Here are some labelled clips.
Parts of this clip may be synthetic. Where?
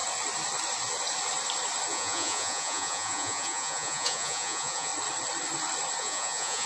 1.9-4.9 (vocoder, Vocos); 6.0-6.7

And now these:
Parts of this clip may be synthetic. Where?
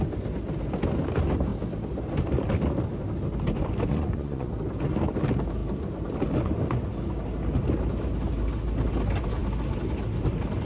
3.9-4.5 (vocoder, Vocos)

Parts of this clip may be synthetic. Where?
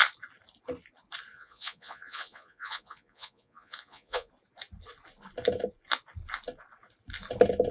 1.3-4.3 (vocoder, Vocos)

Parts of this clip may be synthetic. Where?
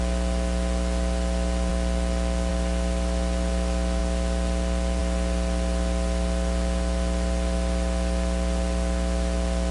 none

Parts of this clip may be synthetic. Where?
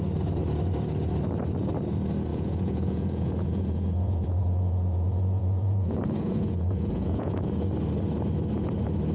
2.3-7.6 (vocoder, Vocos)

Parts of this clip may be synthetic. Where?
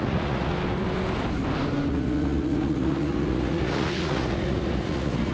0.0-0.5 (vocoder, Vocos); 1.9-5.3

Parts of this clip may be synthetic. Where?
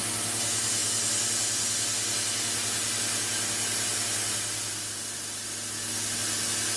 none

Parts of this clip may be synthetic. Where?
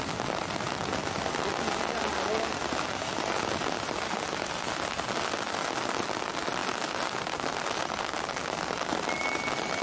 none